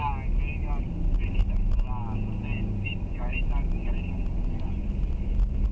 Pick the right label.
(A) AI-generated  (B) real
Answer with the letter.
B